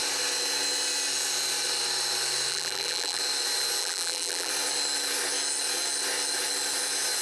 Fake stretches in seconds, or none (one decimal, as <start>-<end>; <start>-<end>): 2.5-3.2; 3.8-4.5